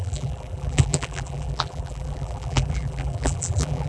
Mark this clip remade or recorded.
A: remade